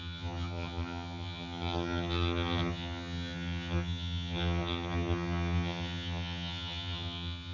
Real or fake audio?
fake